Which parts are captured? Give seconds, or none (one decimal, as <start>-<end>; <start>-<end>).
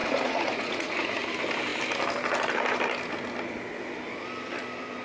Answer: 1.2-5.0